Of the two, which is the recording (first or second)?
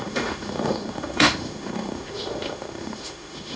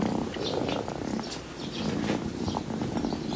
second